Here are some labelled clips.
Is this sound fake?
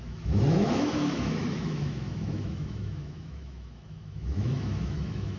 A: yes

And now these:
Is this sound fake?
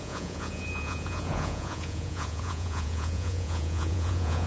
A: yes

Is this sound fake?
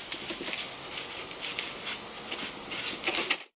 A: no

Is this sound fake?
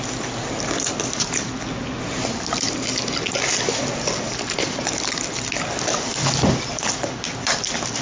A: no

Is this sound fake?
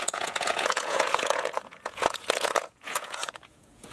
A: yes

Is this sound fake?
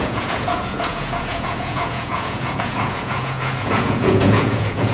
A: yes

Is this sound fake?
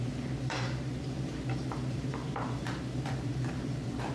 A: yes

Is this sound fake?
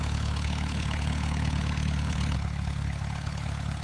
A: yes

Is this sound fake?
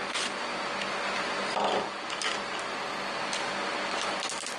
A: no